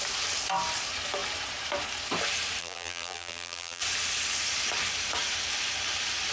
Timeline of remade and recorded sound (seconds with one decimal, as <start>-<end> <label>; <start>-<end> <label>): 0.0-2.6 recorded; 2.6-3.8 remade; 3.8-6.3 recorded